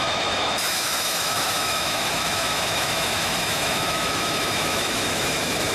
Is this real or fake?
fake